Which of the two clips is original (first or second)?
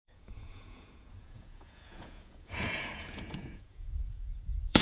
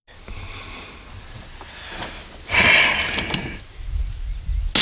second